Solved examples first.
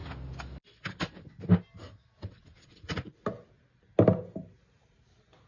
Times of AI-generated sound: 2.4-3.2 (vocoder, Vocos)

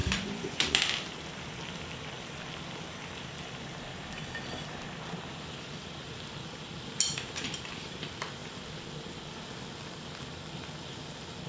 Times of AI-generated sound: 0.0-0.8 (vocoder, Vocos)

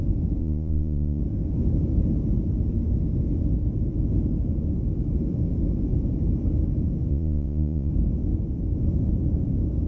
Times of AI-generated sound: 0.4-1.2 (vocoder, Vocos); 7.1-7.9

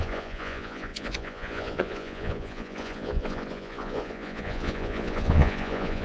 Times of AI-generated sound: 0.0-6.0 (vocoder, Vocos)

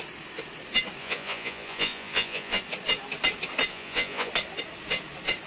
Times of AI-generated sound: 1.0-2.6 (vocoder, Vocos); 3.7-4.3

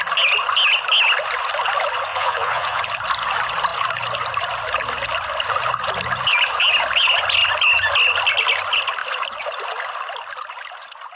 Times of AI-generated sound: 2.1-2.8 (vocoder, Vocos)

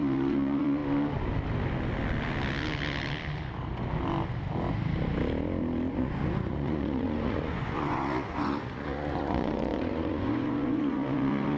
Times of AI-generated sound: 0.0-0.8 (vocoder, Vocos); 5.9-11.6

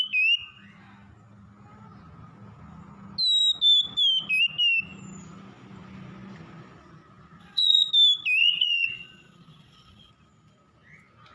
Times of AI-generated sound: 7.4-7.9 (vocoder, Vocos); 8.4-10.1